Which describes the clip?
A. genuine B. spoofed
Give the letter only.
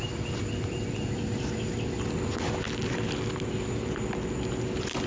A